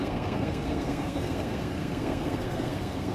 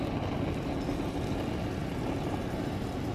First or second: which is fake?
first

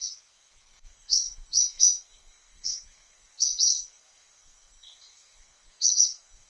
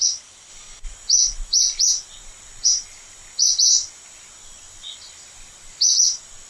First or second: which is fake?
first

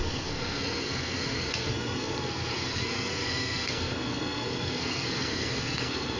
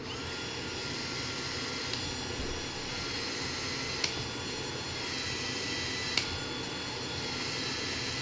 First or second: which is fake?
first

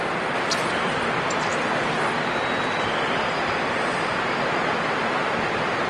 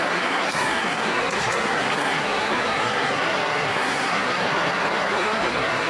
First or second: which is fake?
second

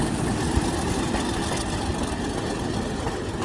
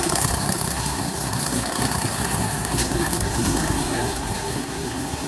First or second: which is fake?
second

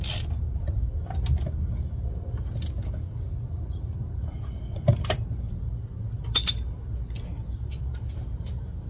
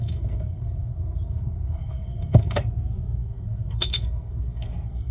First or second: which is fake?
second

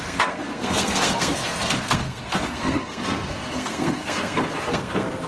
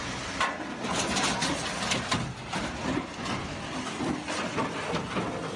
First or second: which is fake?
first